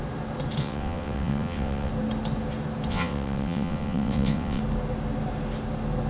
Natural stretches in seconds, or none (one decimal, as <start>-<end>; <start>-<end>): 0.0-0.6; 1.9-2.9; 4.6-6.1